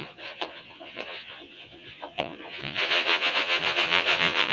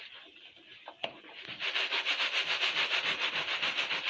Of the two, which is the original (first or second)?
second